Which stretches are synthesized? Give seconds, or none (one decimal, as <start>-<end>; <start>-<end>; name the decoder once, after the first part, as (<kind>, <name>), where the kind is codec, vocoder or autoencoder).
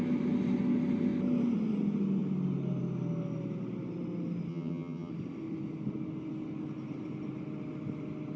4.5-5.1 (vocoder, HiFi-GAN)